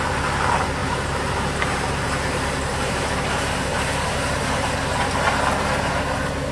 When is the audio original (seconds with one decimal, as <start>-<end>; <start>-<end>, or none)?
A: 0.0-0.8; 4.7-6.5